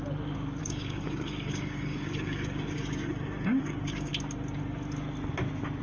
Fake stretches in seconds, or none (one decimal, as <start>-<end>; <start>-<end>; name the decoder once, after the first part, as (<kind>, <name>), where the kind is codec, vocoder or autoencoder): 0.6-4.1 (codec, DAC)